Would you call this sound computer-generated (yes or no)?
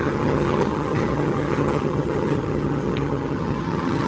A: yes